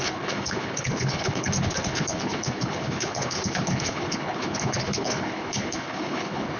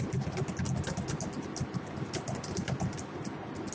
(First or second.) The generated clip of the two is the first